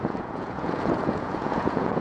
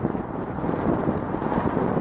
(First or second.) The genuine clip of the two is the second